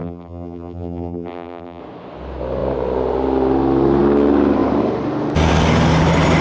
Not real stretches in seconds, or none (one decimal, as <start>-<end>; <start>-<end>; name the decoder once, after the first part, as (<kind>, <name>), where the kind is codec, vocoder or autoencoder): 0.0-1.8 (vocoder, BigVGAN v2)